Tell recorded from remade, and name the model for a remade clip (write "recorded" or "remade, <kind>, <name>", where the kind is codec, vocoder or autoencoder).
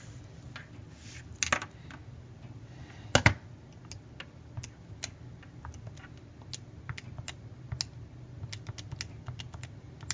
recorded